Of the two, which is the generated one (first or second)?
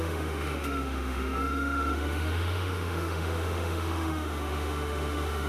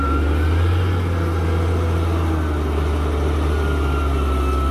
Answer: first